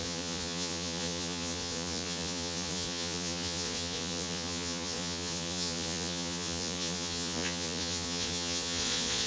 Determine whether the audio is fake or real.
fake